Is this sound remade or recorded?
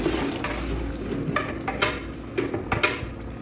recorded